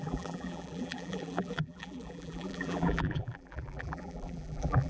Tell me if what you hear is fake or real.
fake